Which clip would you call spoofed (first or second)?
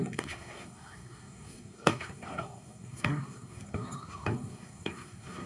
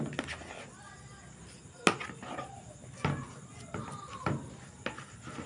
first